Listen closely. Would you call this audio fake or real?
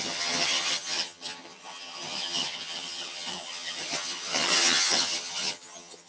fake